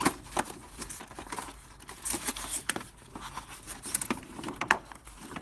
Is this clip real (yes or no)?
no